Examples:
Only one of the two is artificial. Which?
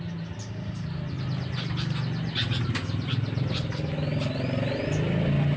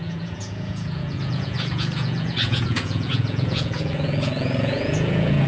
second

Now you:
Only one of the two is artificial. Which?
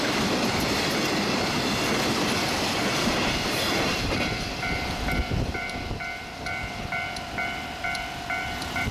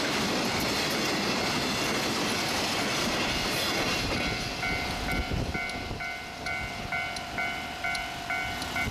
first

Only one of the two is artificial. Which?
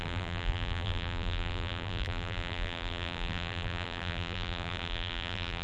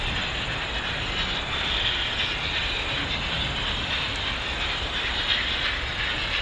first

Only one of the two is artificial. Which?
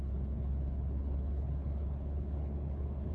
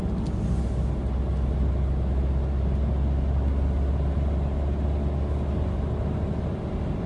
first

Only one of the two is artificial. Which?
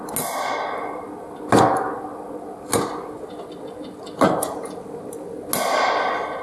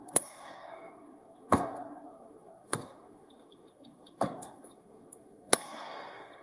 second